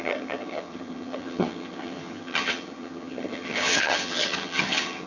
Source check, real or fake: fake